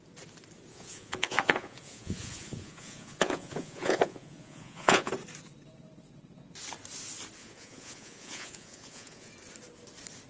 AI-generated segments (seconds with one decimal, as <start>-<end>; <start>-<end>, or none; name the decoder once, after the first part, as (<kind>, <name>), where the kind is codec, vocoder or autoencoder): 0.7-5.1 (vocoder, Vocos); 7.4-9.3